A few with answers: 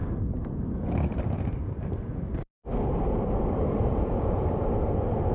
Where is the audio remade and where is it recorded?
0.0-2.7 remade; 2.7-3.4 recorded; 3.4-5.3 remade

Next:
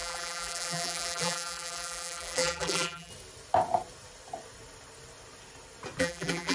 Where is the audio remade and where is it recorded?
0.0-3.1 remade; 3.1-6.0 recorded; 6.0-6.5 remade

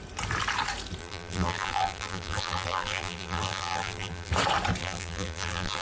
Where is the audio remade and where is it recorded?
0.0-1.0 recorded; 1.0-4.3 remade; 4.3-4.8 recorded; 4.8-5.8 remade

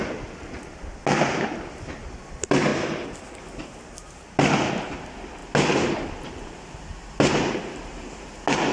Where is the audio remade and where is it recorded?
0.0-2.7 recorded; 2.7-3.4 remade; 3.4-8.7 recorded

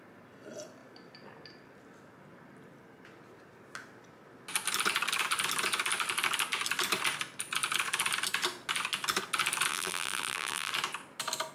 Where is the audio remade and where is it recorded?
0.0-9.7 recorded; 9.7-10.7 remade; 10.7-11.5 recorded

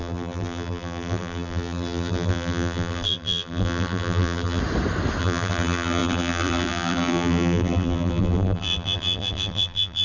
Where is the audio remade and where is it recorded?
0.0-4.6 remade; 4.6-5.2 recorded; 5.2-10.0 remade

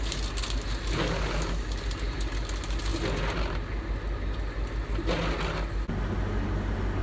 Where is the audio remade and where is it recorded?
0.0-7.0 recorded